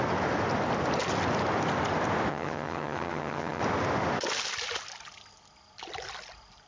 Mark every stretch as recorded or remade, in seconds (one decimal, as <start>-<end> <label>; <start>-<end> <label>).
0.0-2.3 recorded; 2.3-3.6 remade; 3.6-6.7 recorded